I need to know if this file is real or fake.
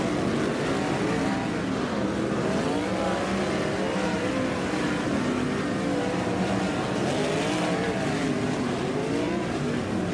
real